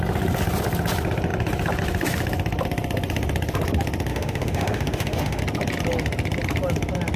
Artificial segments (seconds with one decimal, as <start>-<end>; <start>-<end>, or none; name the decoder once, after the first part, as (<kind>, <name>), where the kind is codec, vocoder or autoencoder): 4.1-5.4 (autoencoder, DAC-VAE)